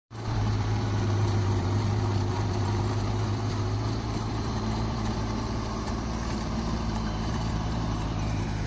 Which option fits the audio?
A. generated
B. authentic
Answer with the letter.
A